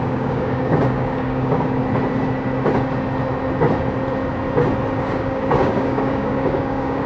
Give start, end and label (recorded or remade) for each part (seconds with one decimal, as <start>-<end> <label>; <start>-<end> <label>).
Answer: 0.0-1.8 remade; 1.8-5.0 recorded; 5.0-7.1 remade